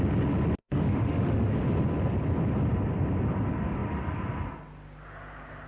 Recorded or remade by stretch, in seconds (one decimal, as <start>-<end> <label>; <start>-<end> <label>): 0.0-0.6 recorded; 0.6-1.5 remade; 1.5-5.7 recorded